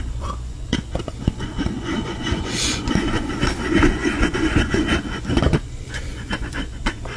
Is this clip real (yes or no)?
no